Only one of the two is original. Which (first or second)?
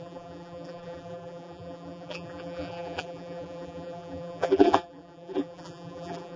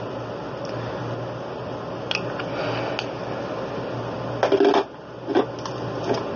second